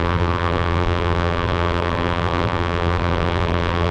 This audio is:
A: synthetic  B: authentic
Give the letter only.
A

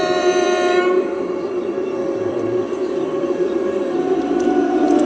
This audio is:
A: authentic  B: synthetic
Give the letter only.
B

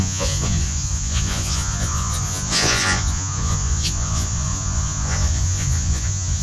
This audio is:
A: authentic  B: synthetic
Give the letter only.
B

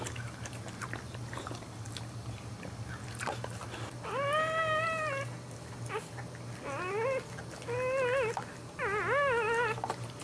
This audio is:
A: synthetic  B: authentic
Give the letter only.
B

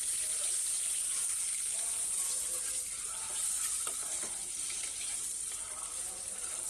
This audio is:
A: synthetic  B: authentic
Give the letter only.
A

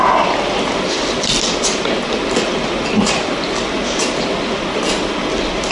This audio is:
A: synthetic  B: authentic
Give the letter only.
B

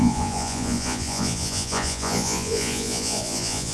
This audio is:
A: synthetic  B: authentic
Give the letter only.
A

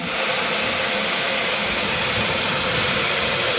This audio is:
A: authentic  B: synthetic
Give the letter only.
B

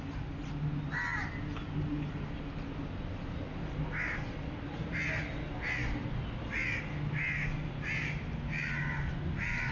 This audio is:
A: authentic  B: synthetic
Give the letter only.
A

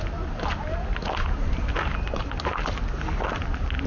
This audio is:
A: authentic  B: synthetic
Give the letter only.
A